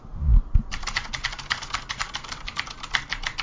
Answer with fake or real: real